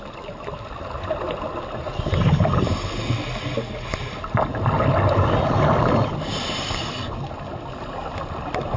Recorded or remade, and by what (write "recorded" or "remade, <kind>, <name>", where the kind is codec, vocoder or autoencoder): recorded